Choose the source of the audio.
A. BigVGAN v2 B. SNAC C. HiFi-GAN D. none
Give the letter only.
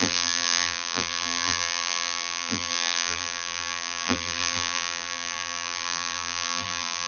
A